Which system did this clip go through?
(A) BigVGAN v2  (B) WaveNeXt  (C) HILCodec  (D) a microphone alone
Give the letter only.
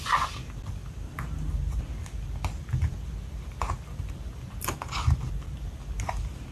A